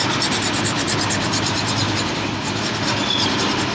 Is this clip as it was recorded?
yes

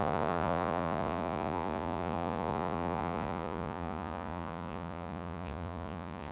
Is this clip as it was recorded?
no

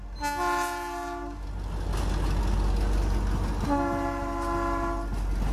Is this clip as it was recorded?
yes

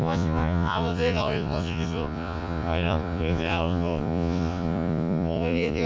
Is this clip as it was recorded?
no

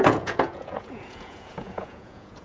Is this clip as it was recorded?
no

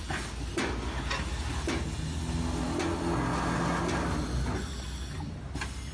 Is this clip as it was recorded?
yes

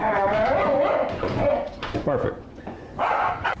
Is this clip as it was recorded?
no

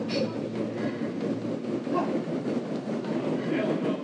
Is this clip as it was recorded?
yes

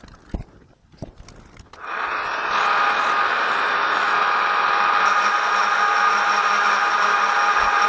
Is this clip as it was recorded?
yes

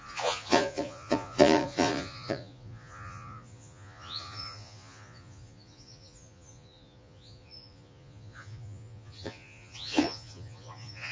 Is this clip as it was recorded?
no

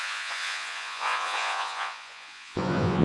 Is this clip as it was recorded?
no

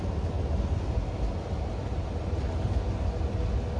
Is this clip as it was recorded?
yes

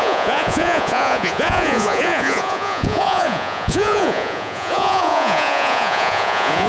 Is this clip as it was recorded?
no